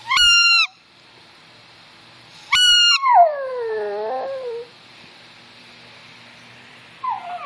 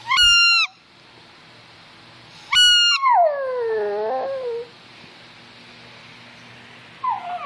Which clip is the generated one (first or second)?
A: first